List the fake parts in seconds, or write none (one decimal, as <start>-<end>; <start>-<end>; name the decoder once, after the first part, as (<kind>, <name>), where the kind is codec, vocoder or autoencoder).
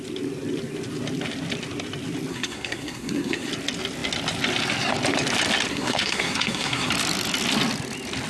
2.3-3.5 (codec, SNAC); 5.7-6.9